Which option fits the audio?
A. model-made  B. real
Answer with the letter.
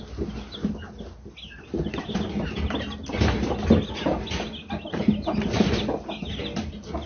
B